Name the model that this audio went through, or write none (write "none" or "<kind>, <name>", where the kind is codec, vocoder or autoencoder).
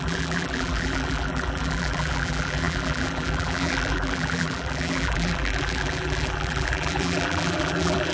vocoder, BigVGAN v2